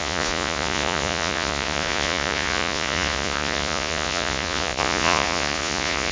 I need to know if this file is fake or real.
fake